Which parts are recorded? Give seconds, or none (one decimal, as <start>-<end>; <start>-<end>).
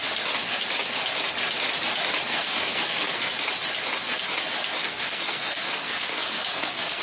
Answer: 0.0-2.3; 3.3-4.8